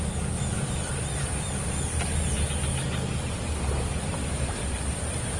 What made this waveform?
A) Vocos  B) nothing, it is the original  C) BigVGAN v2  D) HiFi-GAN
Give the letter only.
B